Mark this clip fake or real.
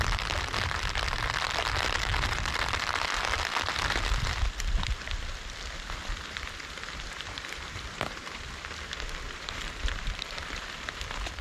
fake